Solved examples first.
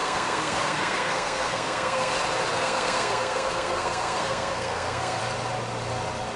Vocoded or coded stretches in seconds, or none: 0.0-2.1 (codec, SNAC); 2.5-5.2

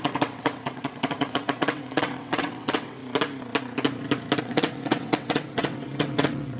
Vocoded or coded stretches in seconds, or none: 0.0-3.0 (vocoder, WaveNeXt); 4.4-6.6

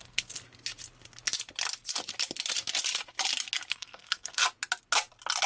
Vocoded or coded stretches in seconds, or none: 0.0-0.4 (codec, SNAC); 3.7-4.4

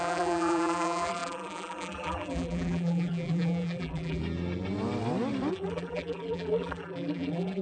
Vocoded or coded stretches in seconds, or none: 0.0-4.2 (vocoder, BigVGAN v2); 5.5-7.6

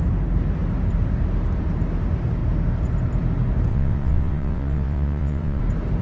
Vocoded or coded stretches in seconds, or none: 3.7-5.6 (vocoder, WaveNeXt)

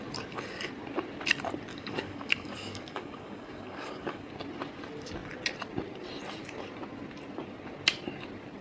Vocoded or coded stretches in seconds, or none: 1.7-4.3 (codec, DAC)